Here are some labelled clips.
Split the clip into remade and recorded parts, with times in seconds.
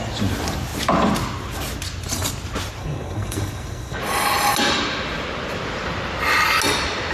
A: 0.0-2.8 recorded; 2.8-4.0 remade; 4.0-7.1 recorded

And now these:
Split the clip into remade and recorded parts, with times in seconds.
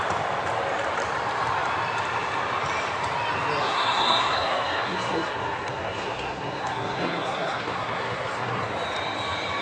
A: 0.0-3.6 recorded; 3.6-8.7 remade; 8.7-9.6 recorded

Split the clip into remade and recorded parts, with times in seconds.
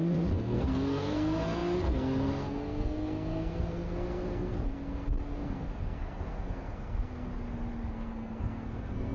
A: 0.0-7.3 remade; 7.3-7.9 recorded; 7.9-9.1 remade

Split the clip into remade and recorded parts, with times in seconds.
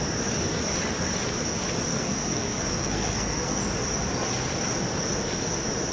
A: 0.0-1.9 recorded; 1.9-3.6 remade; 3.6-5.9 recorded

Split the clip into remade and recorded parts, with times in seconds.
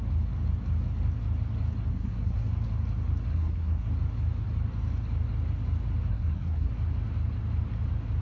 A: 0.0-1.9 recorded; 1.9-2.5 remade; 2.5-3.3 recorded; 3.3-3.9 remade; 3.9-6.1 recorded; 6.1-6.7 remade; 6.7-8.2 recorded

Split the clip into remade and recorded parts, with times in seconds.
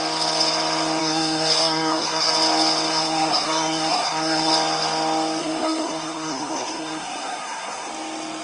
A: 0.0-1.0 recorded; 1.0-2.3 remade; 2.3-2.9 recorded; 2.9-4.5 remade; 4.5-5.4 recorded; 5.4-7.9 remade; 7.9-8.4 recorded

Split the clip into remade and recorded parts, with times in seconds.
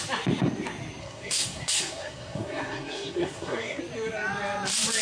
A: 0.0-1.0 recorded; 1.0-3.8 remade; 3.8-5.0 recorded